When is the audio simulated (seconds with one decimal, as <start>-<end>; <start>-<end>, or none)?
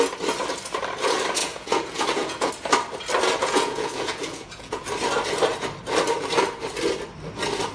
1.4-2.5; 3.4-4.8